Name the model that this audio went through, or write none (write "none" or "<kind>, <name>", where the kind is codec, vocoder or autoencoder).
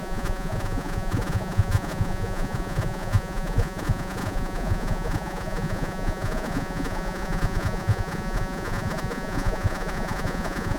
vocoder, Vocos